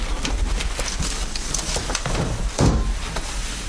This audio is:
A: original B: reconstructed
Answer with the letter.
B